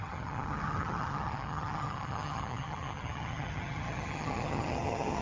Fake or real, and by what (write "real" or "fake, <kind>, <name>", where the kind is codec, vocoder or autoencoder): fake, vocoder, HiFi-GAN